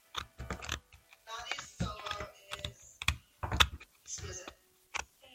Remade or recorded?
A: recorded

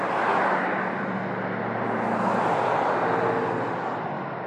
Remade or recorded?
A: recorded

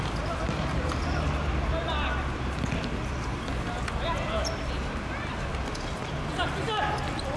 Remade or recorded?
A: recorded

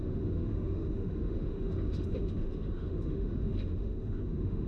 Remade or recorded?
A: remade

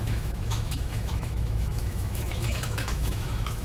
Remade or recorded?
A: remade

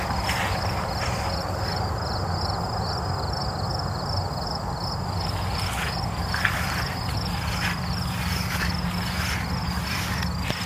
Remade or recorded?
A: recorded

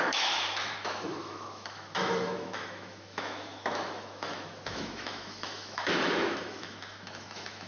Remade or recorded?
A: remade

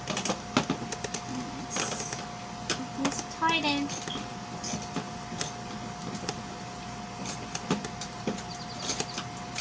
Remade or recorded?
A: recorded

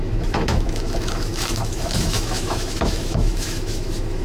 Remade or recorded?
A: remade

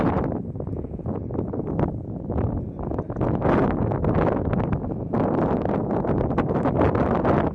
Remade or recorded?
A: recorded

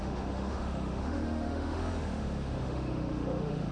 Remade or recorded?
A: remade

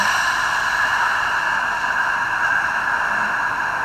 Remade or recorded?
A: recorded